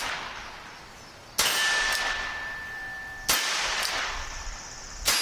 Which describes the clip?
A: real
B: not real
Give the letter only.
A